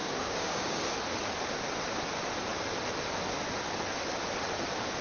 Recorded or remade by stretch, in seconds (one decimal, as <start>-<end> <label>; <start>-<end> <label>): 0.0-0.8 remade; 0.8-5.0 recorded